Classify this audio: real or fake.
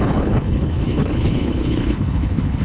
fake